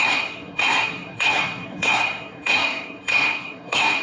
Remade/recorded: remade